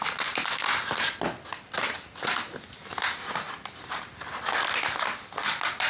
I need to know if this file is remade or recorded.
recorded